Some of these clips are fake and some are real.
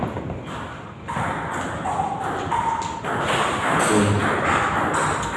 real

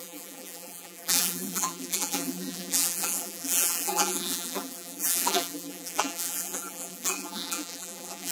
fake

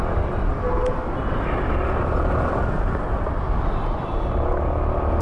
real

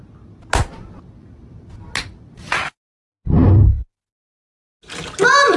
real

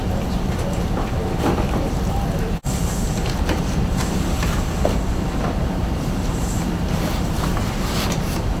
fake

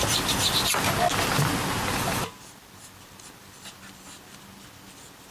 real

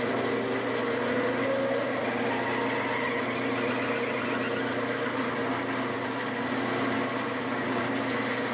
real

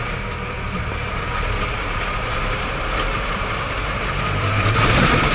fake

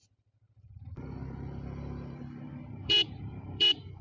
fake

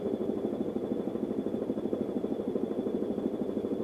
fake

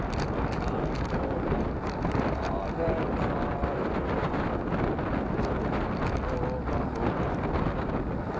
real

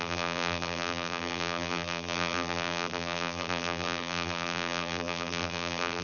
fake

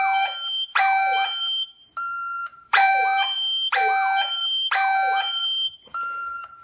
fake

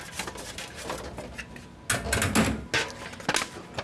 real